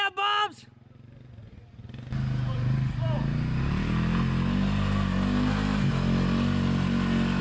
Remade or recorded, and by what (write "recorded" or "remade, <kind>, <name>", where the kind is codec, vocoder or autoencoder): recorded